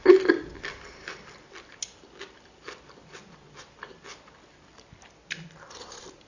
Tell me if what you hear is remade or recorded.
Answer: recorded